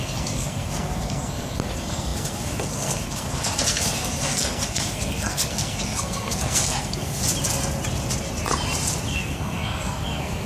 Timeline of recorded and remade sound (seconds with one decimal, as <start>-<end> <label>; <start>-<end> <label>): 0.0-7.2 remade; 7.2-9.1 recorded; 9.1-10.5 remade